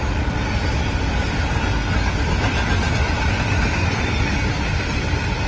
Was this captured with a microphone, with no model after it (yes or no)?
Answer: yes